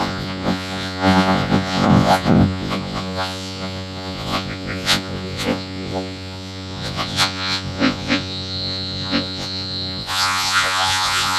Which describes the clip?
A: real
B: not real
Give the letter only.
B